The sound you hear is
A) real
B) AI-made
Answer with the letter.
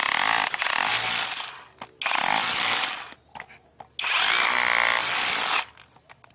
A